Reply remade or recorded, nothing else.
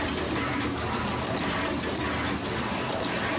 recorded